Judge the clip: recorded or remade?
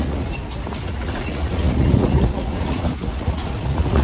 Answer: remade